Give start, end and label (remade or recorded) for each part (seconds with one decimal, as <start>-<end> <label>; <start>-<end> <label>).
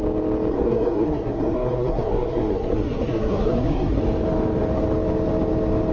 0.0-0.5 recorded; 0.5-4.0 remade; 4.0-5.9 recorded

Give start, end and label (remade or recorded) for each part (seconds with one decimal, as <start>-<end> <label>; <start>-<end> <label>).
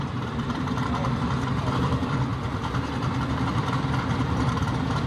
0.0-2.3 remade; 2.3-3.5 recorded; 3.5-5.1 remade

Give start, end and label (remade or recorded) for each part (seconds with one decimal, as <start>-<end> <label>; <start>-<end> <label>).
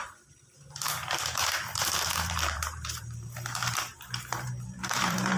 0.0-5.4 remade